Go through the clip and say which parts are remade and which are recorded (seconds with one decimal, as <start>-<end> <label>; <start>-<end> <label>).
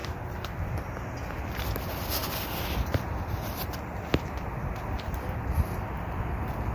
0.0-0.9 remade; 0.9-2.2 recorded; 2.2-6.2 remade; 6.2-6.7 recorded